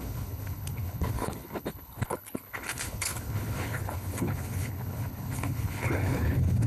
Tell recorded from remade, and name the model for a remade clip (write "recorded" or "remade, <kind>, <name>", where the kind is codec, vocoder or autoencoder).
remade, codec, HILCodec